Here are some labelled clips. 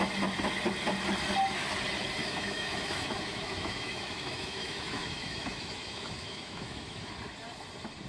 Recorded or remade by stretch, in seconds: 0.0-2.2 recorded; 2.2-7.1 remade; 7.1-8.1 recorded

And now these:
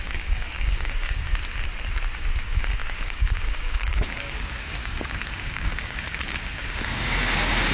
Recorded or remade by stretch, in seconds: 0.0-1.3 remade; 1.3-2.4 recorded; 2.4-7.7 remade

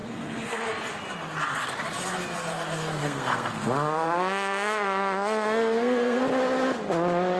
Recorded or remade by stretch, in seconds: 0.0-0.6 remade; 0.6-3.0 recorded; 3.0-6.2 remade; 6.2-7.4 recorded

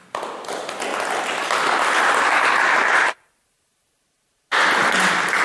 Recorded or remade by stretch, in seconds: 0.0-5.4 recorded

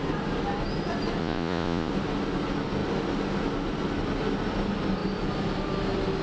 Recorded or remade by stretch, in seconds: 0.0-1.2 recorded; 1.2-1.9 remade; 1.9-6.2 recorded

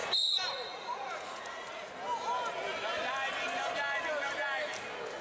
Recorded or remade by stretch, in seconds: 0.0-1.9 remade; 1.9-5.2 recorded

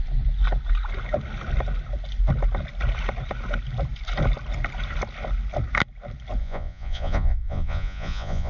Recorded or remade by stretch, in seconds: 0.0-6.4 recorded; 6.4-8.5 remade